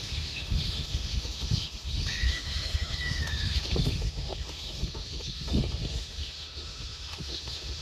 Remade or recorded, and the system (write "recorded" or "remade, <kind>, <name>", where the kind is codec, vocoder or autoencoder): remade, autoencoder, DAC-VAE